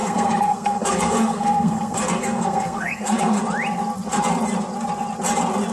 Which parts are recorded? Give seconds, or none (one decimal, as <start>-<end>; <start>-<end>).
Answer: 3.4-5.7